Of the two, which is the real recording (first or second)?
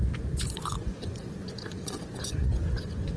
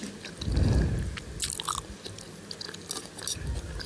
second